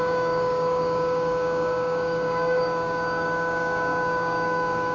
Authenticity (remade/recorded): remade